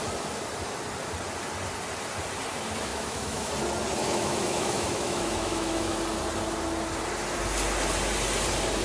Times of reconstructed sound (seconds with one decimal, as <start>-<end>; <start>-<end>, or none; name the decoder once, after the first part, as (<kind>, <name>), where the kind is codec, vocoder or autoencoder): 2.9-3.5 (autoencoder, DAC-VAE); 4.0-6.0